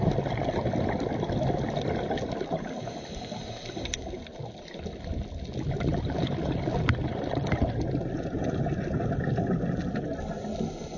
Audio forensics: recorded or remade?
recorded